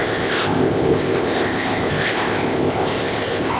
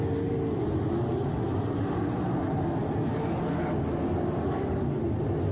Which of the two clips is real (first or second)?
second